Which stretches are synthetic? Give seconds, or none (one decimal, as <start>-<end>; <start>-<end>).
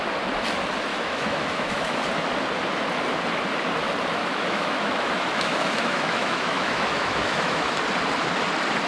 0.9-2.0; 4.2-7.8